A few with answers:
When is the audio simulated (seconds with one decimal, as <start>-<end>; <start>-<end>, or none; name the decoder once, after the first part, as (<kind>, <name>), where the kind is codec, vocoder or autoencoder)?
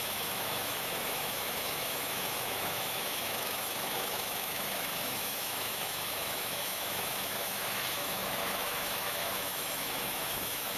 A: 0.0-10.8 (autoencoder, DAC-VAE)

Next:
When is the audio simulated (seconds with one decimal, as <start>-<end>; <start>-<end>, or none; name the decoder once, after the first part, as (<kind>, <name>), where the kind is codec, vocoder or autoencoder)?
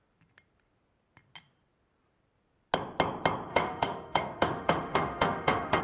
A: 3.5-5.8 (autoencoder, DAC-VAE)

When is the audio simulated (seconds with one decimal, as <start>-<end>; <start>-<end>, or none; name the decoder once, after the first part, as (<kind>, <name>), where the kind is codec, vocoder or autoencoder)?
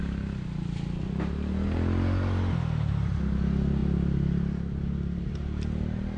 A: none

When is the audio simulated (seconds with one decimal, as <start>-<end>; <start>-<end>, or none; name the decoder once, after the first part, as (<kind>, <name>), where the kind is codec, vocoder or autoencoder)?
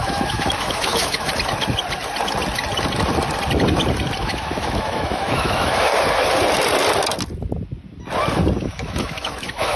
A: 0.0-1.3 (autoencoder, DAC-VAE); 4.2-5.9; 8.6-9.8